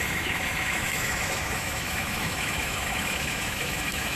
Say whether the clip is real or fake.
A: fake